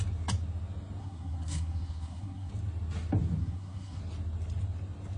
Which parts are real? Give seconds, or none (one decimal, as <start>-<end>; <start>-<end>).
0.0-1.0; 2.5-3.4; 4.0-5.2